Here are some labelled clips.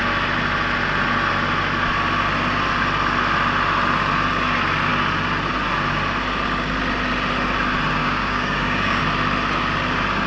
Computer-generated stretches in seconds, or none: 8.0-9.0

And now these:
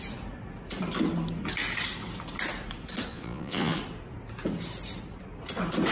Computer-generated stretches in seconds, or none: 3.1-3.8

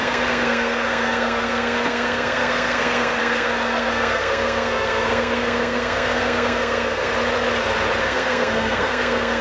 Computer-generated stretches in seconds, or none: 0.0-7.1; 8.0-9.4

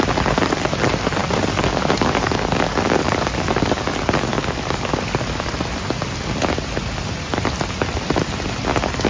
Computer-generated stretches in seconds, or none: 1.2-3.8; 4.3-5.0

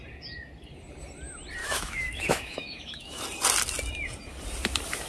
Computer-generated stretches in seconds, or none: 1.6-3.2

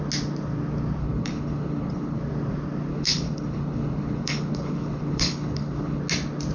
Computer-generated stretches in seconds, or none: 1.0-2.2; 2.9-6.0